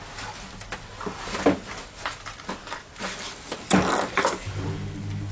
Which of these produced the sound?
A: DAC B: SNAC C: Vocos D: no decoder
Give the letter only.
D